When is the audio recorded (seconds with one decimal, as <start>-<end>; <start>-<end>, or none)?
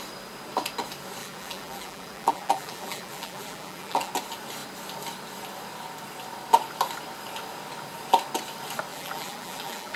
0.0-1.2; 4.1-8.9